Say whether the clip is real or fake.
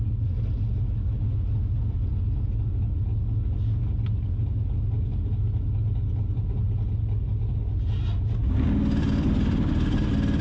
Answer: real